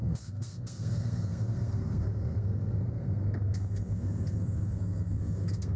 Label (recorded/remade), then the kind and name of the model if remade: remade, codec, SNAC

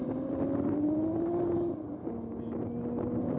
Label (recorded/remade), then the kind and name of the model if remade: recorded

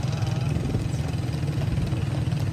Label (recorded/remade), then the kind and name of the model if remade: recorded